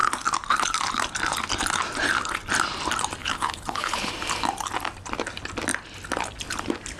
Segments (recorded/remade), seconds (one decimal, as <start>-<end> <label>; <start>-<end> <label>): 0.0-3.2 recorded; 3.2-4.1 remade; 4.1-7.0 recorded

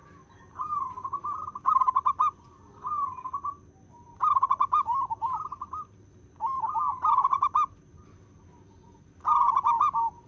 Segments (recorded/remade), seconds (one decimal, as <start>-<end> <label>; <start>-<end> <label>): 0.0-10.3 recorded